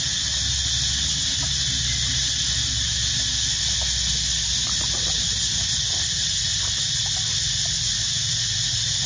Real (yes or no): yes